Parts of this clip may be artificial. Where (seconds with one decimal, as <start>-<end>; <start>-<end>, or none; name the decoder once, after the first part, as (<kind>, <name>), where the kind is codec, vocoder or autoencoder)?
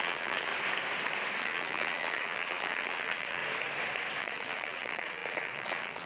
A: 0.0-0.5 (vocoder, Vocos); 1.4-3.4; 4.2-6.1